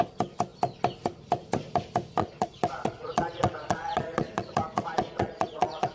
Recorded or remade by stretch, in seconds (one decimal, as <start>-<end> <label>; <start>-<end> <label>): 0.0-2.2 recorded; 2.2-5.9 remade